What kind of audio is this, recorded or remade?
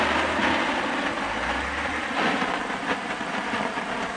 recorded